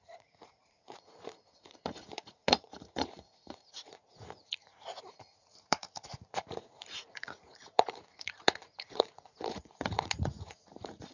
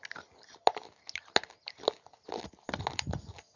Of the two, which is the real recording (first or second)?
second